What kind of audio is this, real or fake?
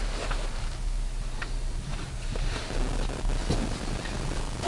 real